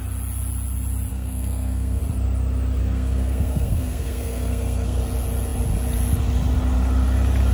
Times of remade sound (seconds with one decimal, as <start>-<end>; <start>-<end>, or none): 1.1-2.0; 2.8-5.0